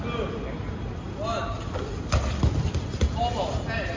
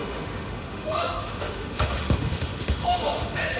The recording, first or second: first